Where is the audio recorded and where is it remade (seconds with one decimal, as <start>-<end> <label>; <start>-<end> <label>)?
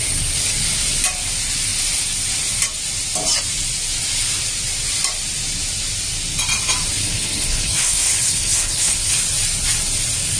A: 0.0-7.0 recorded; 7.0-9.2 remade; 9.2-10.4 recorded